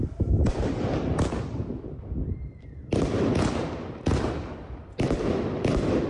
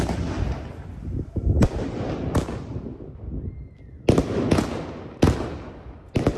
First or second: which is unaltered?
second